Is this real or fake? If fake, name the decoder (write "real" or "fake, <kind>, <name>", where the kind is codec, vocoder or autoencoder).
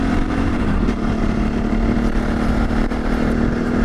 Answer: fake, vocoder, BigVGAN v2